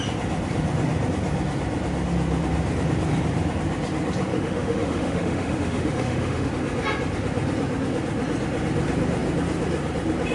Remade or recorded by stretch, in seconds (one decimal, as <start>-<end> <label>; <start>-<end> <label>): 0.0-4.3 recorded; 4.3-6.5 remade; 6.5-10.3 recorded